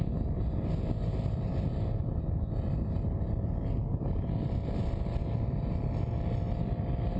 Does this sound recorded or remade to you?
recorded